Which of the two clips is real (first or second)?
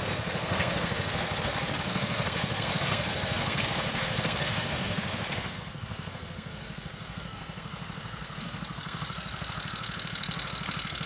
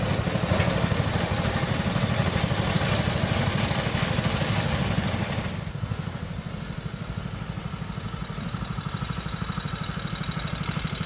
second